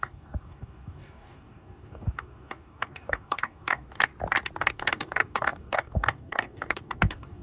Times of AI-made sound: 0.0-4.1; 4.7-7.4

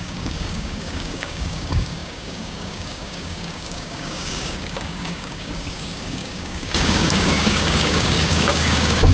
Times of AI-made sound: 0.0-9.1

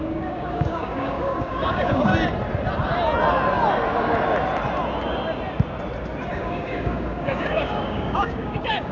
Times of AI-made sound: 0.0-2.1; 6.3-8.9

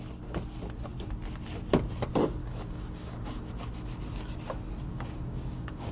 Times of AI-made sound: 2.4-3.5; 4.9-5.9